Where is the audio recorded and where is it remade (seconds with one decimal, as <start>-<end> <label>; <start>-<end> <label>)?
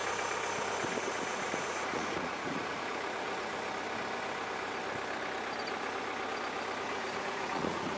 0.0-1.0 recorded; 1.0-3.5 remade; 3.5-6.9 recorded; 6.9-8.0 remade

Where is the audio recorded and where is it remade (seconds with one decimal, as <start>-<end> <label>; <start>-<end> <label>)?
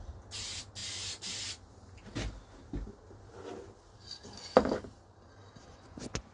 0.0-5.7 recorded; 5.7-6.3 remade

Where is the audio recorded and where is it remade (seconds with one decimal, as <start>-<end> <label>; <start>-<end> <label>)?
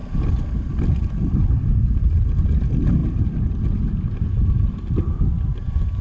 0.0-6.0 recorded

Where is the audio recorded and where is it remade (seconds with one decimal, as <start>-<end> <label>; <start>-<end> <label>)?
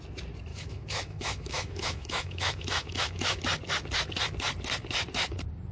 0.0-0.5 recorded; 0.5-3.4 remade; 3.4-5.7 recorded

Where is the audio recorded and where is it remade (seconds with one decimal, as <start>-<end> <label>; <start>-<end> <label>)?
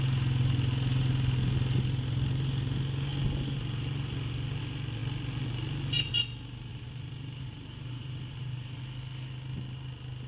0.0-6.7 recorded; 6.7-8.8 remade; 8.8-10.3 recorded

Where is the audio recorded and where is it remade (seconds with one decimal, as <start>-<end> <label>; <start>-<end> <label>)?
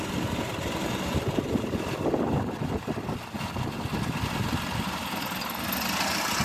0.0-0.8 recorded; 0.8-1.7 remade; 1.7-6.4 recorded